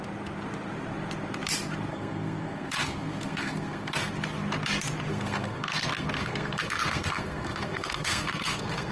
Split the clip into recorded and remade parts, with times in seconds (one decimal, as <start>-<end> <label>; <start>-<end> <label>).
0.0-1.9 recorded; 1.9-4.1 remade; 4.1-5.1 recorded; 5.1-8.9 remade